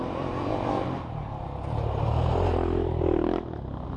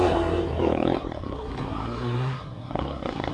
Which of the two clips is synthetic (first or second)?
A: second